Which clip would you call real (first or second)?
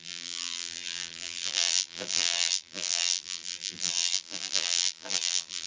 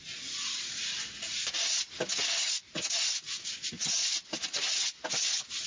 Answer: second